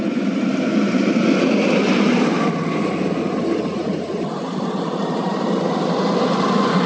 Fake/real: fake